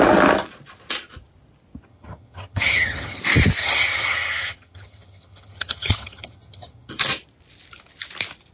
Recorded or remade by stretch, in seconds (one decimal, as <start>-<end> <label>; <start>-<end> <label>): 0.0-1.9 recorded; 1.9-3.2 remade; 3.2-3.6 recorded; 3.6-6.9 remade; 6.9-8.5 recorded